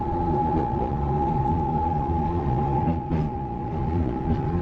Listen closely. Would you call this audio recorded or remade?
remade